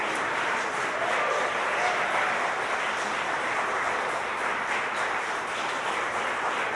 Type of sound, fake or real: fake